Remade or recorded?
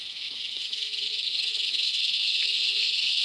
remade